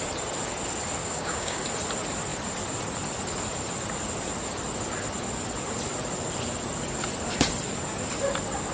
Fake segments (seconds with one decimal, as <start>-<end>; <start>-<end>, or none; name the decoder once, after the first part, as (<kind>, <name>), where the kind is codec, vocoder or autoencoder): 1.0-1.6 (codec, DAC)

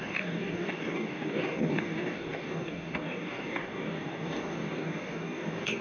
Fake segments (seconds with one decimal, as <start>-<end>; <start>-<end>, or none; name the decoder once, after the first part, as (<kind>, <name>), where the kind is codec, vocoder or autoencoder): 0.0-5.8 (codec, DAC)

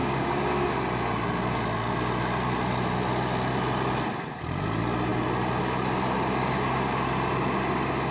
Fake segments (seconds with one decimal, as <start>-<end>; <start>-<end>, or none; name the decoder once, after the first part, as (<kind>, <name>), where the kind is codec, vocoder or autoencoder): 0.0-0.7 (codec, DAC)

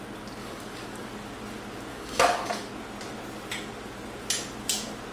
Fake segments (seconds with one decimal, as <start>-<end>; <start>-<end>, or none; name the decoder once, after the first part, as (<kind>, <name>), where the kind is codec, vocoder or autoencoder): 0.4-1.1 (codec, DAC); 1.9-2.7